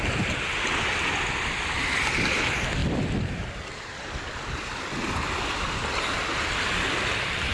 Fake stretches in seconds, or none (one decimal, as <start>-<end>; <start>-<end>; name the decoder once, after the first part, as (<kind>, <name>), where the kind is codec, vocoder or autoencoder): none